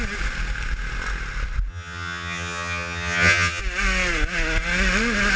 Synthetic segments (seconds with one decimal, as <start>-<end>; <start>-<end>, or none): 1.7-3.6